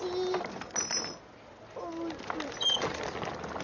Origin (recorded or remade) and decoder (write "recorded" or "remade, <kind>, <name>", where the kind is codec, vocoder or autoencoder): recorded